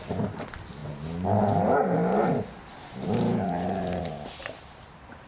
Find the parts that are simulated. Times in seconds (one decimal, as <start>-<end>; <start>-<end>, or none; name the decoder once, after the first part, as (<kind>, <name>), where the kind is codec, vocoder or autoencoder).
none